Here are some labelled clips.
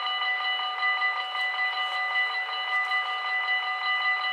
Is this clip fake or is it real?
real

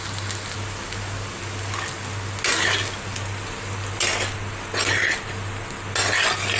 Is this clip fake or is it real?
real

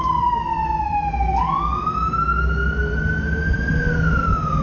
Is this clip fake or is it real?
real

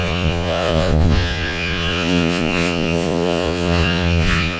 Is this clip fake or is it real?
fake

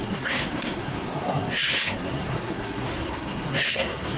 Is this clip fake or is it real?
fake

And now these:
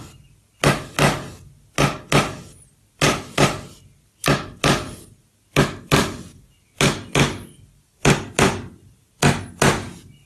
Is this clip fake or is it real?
real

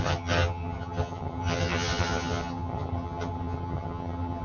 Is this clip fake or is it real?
fake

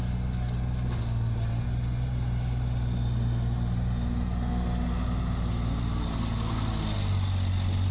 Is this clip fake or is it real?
real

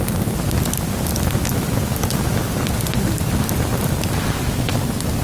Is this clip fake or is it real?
real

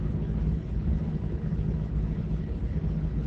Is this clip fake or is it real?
fake